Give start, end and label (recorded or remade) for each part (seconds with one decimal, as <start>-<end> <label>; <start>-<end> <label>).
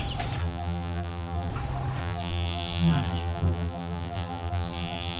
0.0-0.4 recorded; 0.4-1.5 remade; 1.5-2.0 recorded; 2.0-5.2 remade